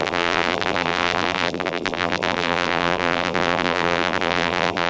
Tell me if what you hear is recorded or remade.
remade